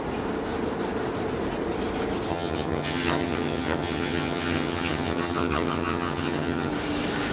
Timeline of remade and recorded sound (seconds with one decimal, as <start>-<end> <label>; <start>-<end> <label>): 0.0-2.3 recorded; 2.3-6.7 remade; 6.7-7.3 recorded